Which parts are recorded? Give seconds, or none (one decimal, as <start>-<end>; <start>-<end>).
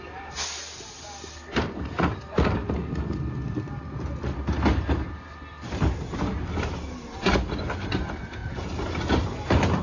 0.0-9.8